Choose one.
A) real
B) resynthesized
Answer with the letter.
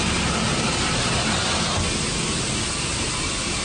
A